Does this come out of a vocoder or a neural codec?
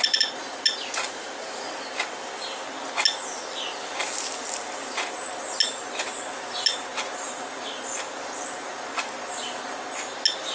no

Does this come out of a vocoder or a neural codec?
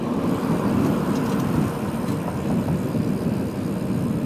no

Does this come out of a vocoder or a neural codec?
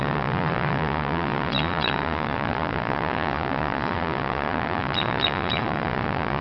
yes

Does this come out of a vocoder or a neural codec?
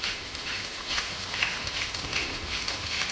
yes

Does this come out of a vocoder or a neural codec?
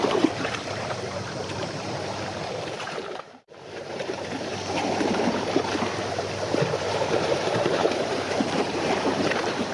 yes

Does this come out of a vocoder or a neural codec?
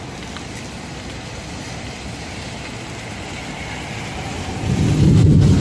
no